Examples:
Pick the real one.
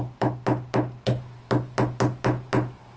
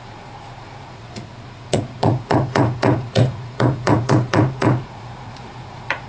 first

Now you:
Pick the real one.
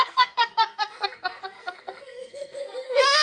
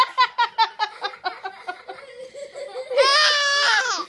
second